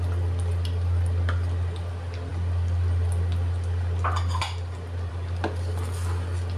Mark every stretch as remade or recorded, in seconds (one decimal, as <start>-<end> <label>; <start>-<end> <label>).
0.0-6.6 recorded